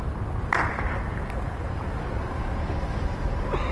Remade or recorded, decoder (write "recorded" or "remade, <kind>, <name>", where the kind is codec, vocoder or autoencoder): recorded